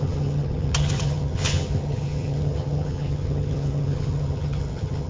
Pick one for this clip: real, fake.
fake